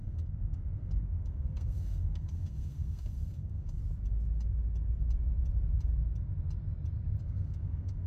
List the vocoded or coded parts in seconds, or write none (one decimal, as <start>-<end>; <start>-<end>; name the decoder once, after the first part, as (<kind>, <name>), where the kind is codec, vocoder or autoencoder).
0.0-3.8 (codec, SNAC); 7.2-8.1